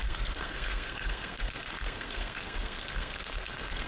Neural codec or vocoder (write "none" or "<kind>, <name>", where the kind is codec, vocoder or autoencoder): codec, SNAC